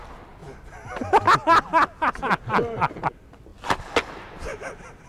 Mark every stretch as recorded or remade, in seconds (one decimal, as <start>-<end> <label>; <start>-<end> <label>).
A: 0.0-5.1 recorded